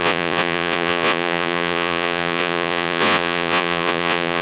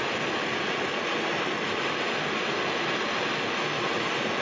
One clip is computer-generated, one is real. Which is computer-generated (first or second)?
first